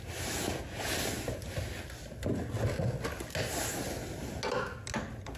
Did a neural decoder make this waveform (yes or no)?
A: no